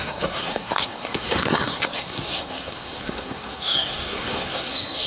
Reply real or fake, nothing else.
fake